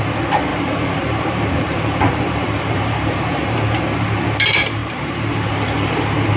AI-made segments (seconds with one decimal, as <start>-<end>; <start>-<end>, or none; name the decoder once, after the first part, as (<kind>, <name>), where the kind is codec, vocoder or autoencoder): 0.5-3.8 (vocoder, BigVGAN v2); 4.8-6.4